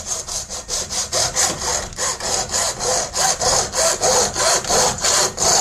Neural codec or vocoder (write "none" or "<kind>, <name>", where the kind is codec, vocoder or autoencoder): none